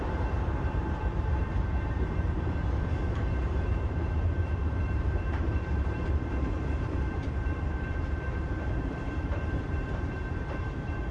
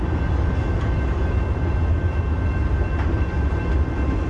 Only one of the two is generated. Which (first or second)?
first